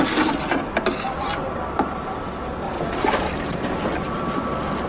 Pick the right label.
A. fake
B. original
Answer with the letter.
B